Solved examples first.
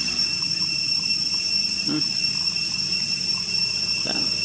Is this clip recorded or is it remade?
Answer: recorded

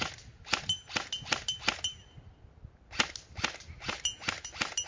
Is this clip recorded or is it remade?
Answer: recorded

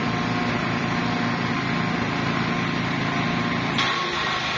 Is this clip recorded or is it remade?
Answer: recorded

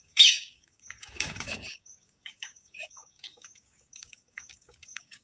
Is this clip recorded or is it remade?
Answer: remade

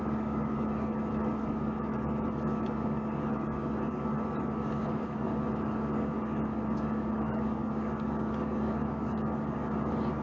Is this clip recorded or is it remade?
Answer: remade